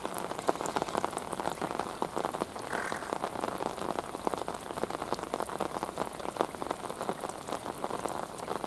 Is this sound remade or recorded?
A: recorded